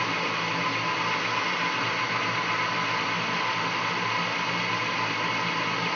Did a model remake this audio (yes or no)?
no